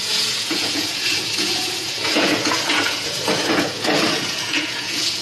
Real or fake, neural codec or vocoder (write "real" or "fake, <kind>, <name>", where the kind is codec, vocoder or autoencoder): fake, vocoder, Vocos